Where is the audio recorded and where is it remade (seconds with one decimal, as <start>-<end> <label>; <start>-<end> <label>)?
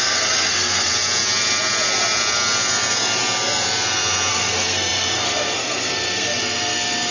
0.0-0.9 remade; 0.9-4.3 recorded; 4.3-7.1 remade